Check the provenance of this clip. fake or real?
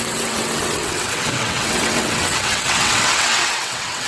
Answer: fake